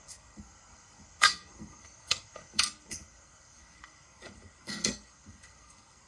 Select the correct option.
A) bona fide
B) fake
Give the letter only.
B